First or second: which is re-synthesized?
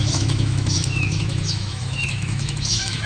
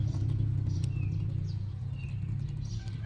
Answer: first